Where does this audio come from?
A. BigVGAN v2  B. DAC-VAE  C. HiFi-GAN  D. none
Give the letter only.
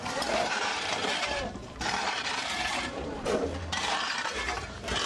A